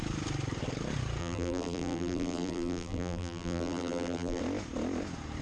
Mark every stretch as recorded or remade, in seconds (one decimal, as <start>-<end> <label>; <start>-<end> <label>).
0.0-1.2 recorded; 1.2-4.4 remade; 4.4-5.4 recorded